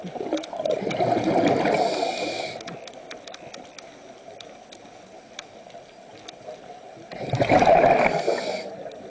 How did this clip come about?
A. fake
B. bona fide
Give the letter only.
B